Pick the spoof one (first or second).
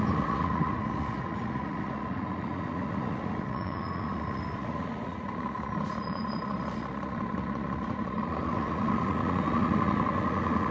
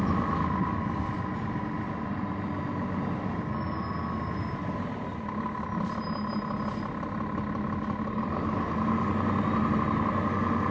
first